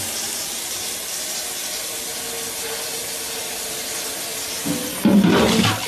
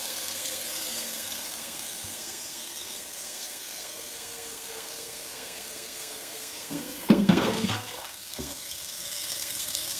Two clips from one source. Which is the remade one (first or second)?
second